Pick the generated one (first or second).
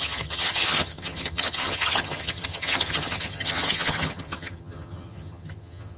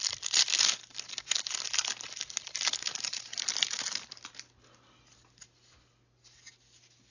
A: first